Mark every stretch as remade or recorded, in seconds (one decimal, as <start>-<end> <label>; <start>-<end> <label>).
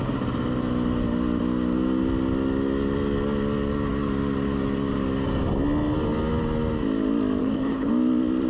0.0-7.4 recorded; 7.4-7.9 remade; 7.9-8.5 recorded